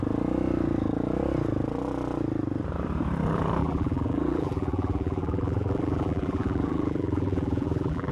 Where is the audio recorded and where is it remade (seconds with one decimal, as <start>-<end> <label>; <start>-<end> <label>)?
0.0-3.6 recorded; 3.6-8.1 remade